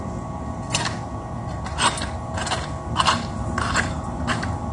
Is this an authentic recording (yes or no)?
yes